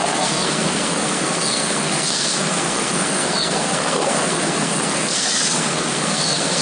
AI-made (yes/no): yes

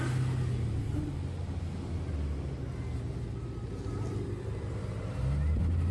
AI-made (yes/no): no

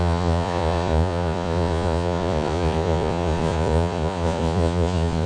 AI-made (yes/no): yes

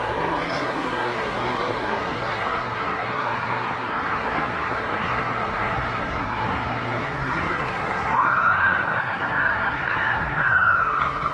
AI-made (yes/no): yes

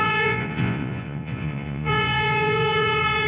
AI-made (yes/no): yes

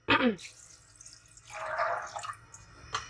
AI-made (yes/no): no